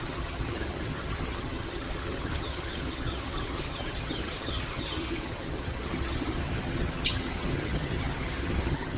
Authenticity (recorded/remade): remade